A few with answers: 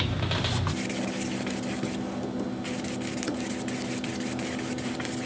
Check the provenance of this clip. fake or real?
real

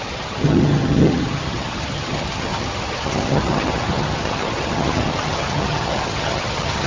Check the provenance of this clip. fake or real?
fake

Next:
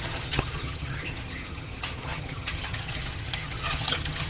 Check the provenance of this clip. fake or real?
fake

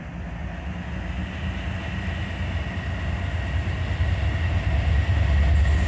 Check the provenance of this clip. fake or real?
real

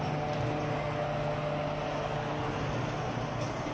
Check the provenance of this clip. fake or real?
real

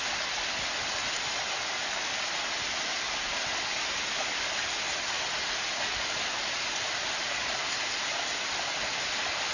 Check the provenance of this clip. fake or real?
real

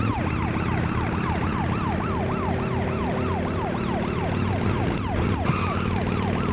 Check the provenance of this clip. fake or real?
real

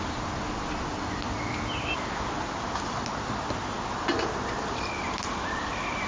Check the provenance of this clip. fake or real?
real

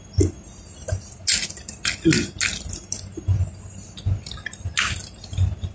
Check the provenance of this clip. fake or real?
real